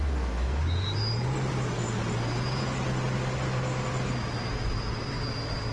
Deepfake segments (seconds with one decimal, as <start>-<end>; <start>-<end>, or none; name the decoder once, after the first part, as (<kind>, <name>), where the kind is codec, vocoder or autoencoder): 0.0-0.6 (codec, SNAC)